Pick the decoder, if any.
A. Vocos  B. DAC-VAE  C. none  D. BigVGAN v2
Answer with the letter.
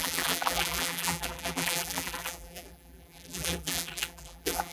D